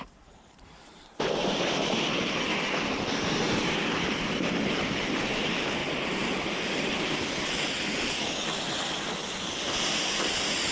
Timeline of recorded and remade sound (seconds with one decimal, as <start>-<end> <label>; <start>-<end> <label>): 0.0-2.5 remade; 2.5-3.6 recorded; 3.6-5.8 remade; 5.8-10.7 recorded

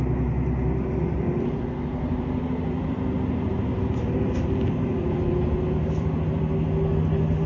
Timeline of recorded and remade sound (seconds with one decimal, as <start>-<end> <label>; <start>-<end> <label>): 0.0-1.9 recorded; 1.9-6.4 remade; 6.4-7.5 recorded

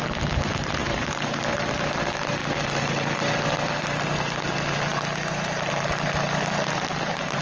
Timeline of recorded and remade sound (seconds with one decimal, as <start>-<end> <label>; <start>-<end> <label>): 0.0-0.8 recorded; 0.8-1.9 remade; 1.9-7.4 recorded